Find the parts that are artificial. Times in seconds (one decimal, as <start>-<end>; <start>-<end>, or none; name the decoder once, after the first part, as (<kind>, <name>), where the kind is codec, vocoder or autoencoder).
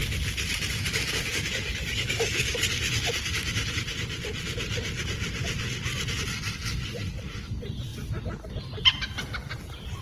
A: 1.3-2.8 (codec, DAC)